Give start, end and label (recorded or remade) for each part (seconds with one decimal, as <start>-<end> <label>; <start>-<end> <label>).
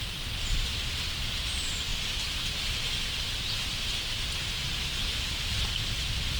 0.0-6.4 remade